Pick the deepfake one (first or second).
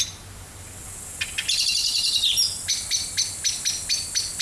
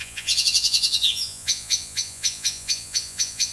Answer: second